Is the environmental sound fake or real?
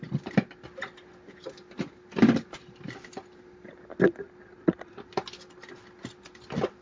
real